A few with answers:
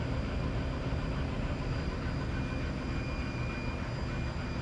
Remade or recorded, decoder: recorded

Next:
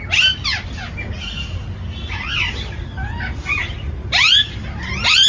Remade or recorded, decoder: recorded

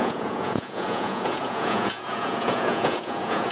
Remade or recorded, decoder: remade, vocoder, Vocos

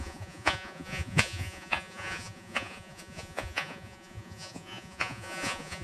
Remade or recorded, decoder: remade, vocoder, Vocos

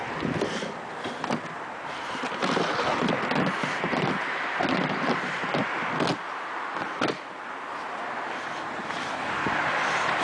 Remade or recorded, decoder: recorded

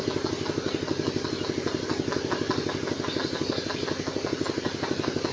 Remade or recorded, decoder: recorded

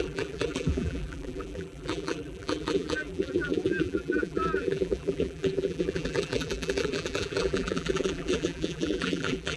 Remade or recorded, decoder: remade, vocoder, BigVGAN v2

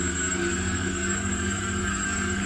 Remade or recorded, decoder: remade, codec, DAC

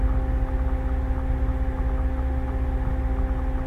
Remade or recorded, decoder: recorded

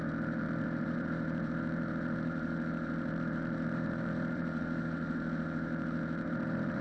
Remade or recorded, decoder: remade, vocoder, BigVGAN v2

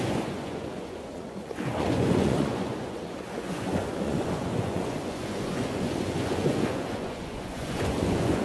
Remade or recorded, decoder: remade, vocoder, Vocos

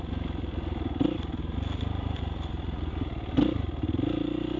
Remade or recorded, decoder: recorded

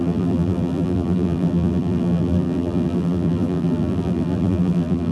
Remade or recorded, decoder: remade, vocoder, BigVGAN v2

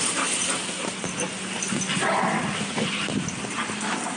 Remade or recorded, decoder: recorded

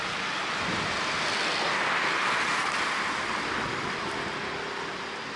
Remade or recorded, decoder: recorded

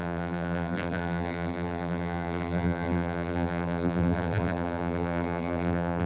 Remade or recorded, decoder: remade, vocoder, BigVGAN v2